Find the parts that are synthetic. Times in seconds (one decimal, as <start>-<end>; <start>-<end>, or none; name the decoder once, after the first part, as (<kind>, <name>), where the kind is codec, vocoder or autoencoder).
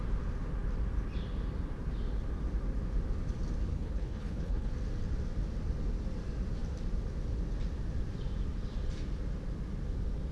3.7-4.7 (codec, HILCodec)